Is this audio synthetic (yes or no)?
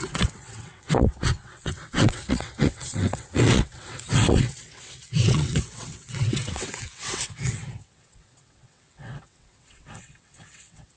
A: yes